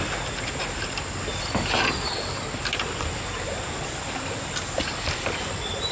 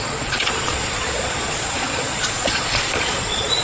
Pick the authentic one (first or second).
first